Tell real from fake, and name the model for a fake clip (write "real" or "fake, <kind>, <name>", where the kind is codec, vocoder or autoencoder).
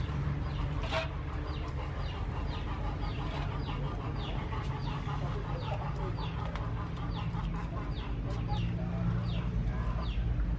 real